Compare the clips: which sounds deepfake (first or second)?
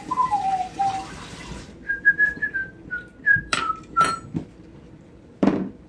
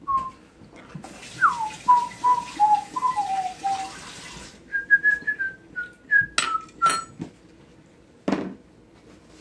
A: first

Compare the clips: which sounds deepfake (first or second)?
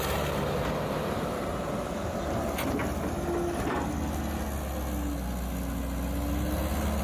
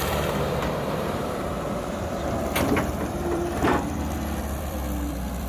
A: second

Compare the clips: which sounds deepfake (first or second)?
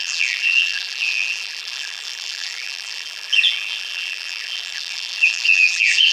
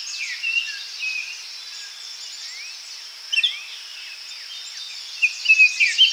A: first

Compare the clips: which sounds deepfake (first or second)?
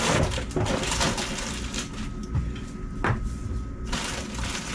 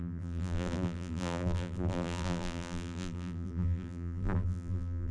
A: second